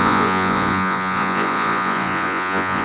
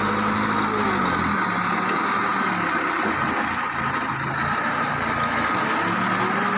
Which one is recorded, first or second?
second